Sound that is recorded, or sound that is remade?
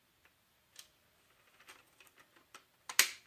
recorded